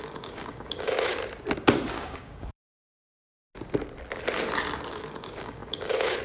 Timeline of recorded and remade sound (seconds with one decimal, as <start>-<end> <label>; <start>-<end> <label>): 0.0-1.2 remade; 1.2-1.9 recorded; 1.9-3.0 remade; 3.0-4.9 recorded; 4.9-6.2 remade